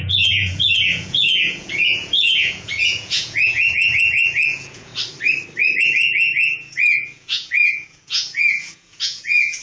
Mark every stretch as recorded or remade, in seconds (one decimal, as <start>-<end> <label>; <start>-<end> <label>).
0.0-4.9 remade; 4.9-5.8 recorded; 5.8-9.6 remade